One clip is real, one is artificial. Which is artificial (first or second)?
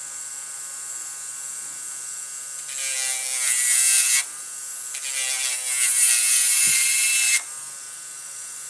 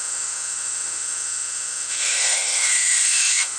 second